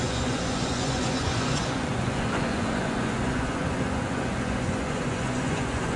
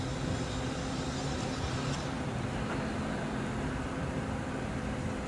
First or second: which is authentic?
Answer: second